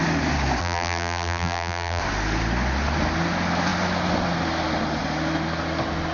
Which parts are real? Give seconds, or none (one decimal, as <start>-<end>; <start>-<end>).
0.0-0.6; 2.0-6.1